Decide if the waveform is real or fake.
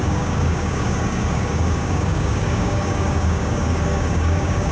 fake